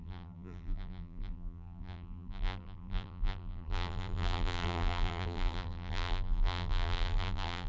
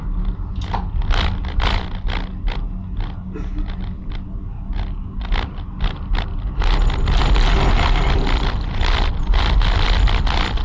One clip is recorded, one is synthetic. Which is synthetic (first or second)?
first